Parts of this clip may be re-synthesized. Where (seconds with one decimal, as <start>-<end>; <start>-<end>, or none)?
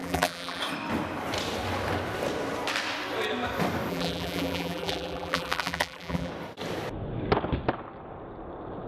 0.0-0.6; 3.9-6.3